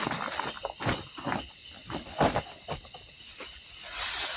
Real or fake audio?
real